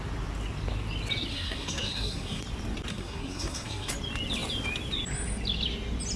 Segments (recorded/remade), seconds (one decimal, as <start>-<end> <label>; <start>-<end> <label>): 0.0-1.3 recorded; 1.3-2.4 remade; 2.4-2.9 recorded; 2.9-3.9 remade; 3.9-6.2 recorded